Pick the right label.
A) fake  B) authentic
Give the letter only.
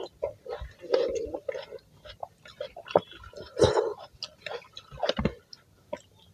B